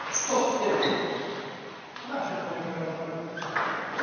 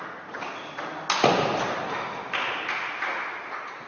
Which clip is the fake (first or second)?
first